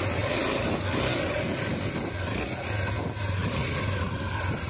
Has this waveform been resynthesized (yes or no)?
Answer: no